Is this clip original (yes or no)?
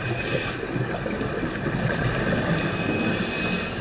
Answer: yes